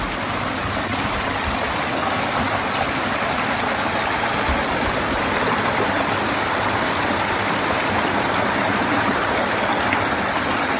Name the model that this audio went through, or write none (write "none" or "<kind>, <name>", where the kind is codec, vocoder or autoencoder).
none